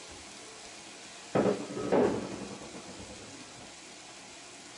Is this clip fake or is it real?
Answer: real